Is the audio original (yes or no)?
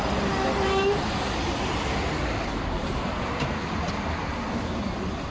yes